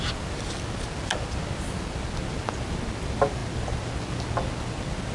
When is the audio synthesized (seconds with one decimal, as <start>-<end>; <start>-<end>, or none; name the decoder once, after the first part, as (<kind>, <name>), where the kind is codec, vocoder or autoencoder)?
none